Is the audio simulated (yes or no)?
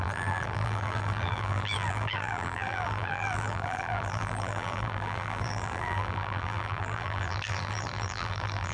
yes